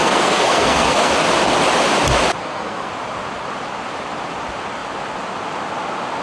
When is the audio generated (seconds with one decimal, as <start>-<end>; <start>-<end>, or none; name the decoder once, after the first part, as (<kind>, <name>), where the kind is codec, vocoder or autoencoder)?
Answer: 0.0-1.1 (codec, SNAC); 2.4-2.9

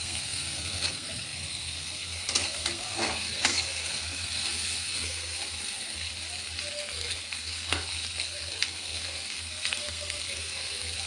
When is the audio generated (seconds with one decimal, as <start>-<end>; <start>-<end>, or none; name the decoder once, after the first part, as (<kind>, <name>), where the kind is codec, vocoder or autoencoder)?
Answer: 0.0-6.1 (codec, SNAC); 6.7-11.1

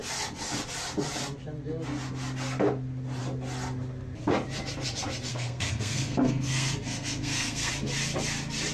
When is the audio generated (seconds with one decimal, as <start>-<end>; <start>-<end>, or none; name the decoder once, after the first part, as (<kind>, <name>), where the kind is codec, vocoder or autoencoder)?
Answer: 5.3-7.7 (codec, SNAC)

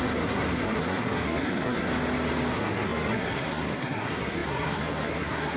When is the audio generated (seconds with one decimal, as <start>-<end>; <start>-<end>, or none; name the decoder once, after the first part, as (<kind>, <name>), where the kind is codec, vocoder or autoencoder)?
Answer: 0.0-1.9 (codec, SNAC); 2.5-5.6

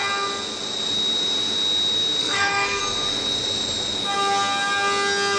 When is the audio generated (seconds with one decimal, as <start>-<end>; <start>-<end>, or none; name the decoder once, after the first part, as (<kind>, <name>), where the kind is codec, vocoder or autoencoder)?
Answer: 2.2-2.8 (codec, SNAC)

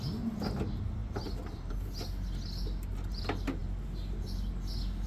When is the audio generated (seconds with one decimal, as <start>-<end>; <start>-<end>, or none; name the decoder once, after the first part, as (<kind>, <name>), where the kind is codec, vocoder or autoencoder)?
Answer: none

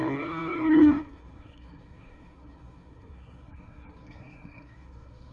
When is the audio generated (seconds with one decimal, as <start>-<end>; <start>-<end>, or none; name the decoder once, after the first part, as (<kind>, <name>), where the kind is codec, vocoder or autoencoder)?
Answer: 0.0-5.3 (codec, SNAC)